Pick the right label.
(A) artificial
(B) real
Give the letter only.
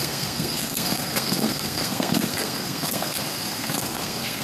A